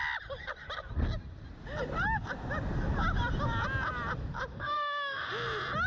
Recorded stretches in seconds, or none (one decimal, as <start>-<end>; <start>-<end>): 0.0-4.5; 5.3-5.9